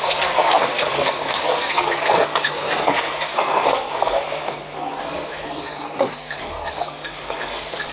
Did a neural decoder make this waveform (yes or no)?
yes